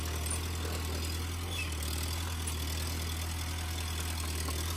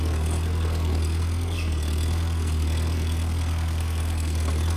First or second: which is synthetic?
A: second